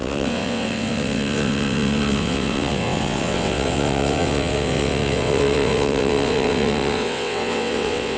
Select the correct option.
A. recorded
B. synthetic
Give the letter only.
B